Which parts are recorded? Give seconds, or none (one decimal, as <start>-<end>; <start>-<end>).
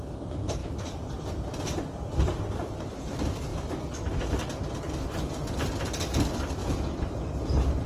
0.0-0.6; 1.6-7.9